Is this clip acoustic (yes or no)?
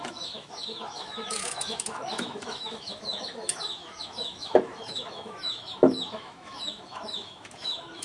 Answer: no